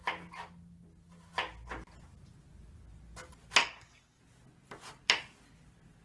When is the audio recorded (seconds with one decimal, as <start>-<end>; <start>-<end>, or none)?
0.0-3.6; 4.2-6.0